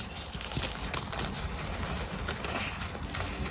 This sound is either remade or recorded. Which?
recorded